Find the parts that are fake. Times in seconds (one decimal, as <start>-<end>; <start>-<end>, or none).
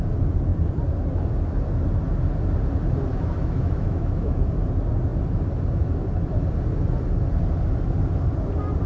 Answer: 3.1-4.5